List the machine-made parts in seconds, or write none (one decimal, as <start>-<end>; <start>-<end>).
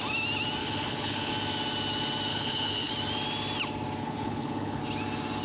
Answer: 0.6-1.3; 2.3-2.9; 4.0-4.8